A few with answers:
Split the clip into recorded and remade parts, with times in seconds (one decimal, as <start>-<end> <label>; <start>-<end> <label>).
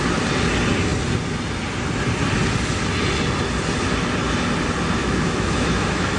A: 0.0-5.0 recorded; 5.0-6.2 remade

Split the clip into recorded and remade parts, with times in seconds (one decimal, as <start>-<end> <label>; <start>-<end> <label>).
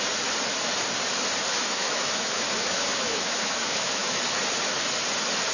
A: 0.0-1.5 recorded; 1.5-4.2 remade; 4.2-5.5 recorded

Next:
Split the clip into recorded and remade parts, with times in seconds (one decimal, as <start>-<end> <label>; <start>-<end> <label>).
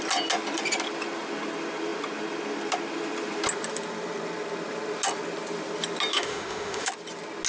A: 0.0-6.1 recorded; 6.1-6.9 remade; 6.9-7.5 recorded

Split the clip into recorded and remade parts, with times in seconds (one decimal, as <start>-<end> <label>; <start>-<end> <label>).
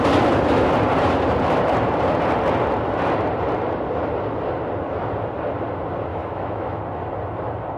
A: 0.0-6.1 recorded; 6.1-6.8 remade; 6.8-7.8 recorded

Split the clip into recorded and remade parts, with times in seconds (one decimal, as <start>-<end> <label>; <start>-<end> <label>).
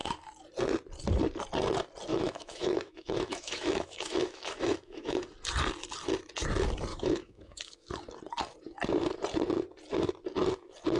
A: 0.0-2.1 recorded; 2.1-5.2 remade; 5.2-6.9 recorded; 6.9-7.9 remade; 7.9-11.0 recorded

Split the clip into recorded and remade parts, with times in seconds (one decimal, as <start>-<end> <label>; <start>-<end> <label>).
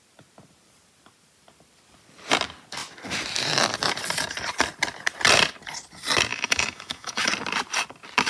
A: 0.0-6.3 recorded; 6.3-7.3 remade; 7.3-8.3 recorded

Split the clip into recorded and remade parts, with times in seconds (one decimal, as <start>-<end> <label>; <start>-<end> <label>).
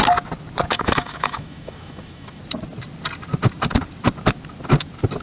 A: 0.0-0.7 recorded; 0.7-2.4 remade; 2.4-5.2 recorded